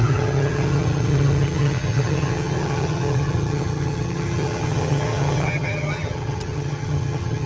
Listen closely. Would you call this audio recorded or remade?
remade